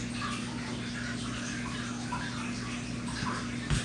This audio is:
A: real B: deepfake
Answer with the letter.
A